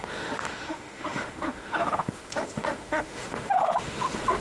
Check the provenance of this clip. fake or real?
fake